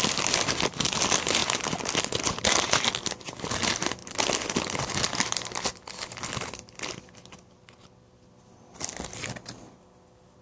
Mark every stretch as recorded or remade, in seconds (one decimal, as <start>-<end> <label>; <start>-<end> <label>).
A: 0.0-10.4 recorded